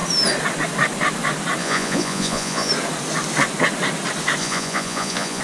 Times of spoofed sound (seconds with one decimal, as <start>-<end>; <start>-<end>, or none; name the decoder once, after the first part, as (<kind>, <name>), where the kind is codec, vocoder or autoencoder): 1.6-2.7 (vocoder, Vocos); 4.4-5.4